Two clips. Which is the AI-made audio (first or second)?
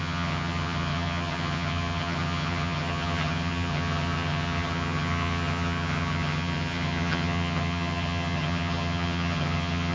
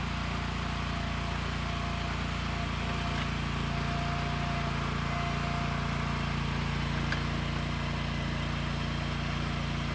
first